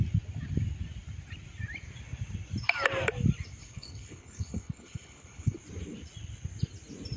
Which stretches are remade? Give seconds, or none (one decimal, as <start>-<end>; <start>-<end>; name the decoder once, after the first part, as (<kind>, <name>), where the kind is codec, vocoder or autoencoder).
3.6-5.6 (codec, HILCodec)